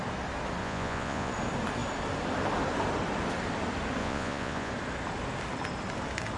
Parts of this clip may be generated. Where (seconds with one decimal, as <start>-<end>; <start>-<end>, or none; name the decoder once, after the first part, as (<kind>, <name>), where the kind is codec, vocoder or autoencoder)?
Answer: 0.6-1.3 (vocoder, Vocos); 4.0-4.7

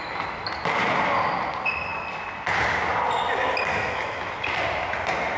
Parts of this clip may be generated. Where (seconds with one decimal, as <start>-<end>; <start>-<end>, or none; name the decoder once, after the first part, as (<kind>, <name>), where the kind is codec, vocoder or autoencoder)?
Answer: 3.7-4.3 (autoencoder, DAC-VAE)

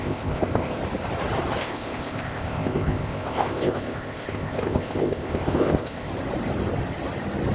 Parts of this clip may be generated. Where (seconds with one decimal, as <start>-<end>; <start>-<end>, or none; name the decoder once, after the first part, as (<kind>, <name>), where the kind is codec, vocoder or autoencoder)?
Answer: 0.0-0.8 (codec, ZipCodec); 1.6-6.1